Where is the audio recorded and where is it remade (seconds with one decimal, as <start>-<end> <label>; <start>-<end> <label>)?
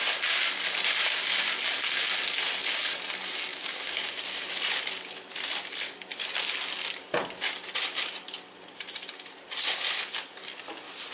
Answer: 0.0-3.5 recorded; 3.5-4.3 remade; 4.3-11.1 recorded